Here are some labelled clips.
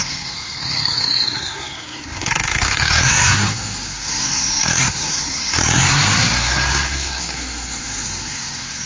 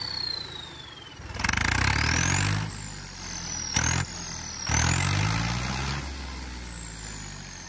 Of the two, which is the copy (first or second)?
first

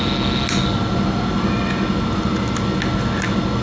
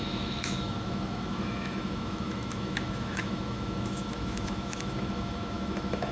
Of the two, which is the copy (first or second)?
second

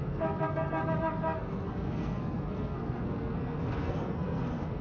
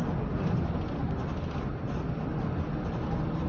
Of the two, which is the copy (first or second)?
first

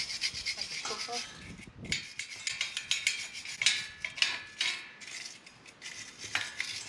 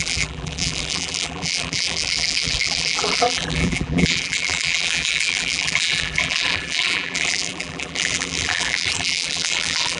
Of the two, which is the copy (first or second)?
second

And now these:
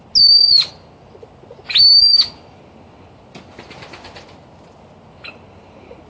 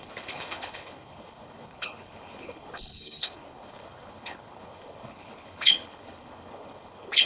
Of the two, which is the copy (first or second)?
second